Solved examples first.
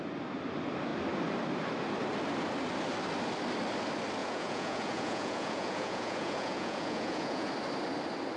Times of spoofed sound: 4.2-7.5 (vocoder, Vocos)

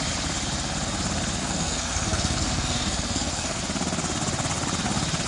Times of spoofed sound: 1.4-3.6 (codec, SNAC)

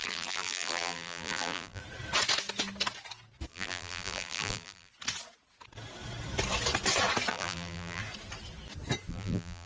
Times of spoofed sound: 0.0-1.8 (vocoder, BigVGAN v2); 3.5-4.9; 7.3-8.0; 9.1-9.7